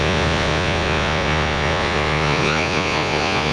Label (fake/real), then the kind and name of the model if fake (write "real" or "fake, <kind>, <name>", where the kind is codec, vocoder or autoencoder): fake, vocoder, Vocos